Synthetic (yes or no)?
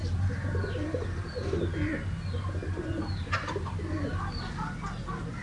no